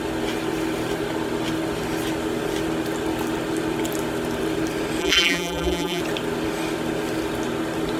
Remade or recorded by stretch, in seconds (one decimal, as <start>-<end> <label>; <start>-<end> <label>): 0.0-5.0 recorded; 5.0-6.0 remade; 6.0-8.0 recorded